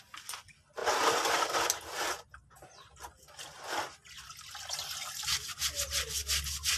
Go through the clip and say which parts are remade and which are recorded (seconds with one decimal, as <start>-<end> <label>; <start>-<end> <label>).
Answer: 0.0-6.8 recorded